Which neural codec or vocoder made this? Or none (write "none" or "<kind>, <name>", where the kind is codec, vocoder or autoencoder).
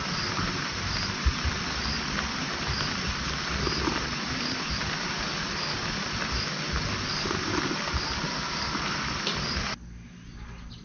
none